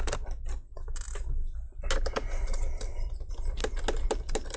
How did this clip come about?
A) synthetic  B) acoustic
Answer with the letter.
B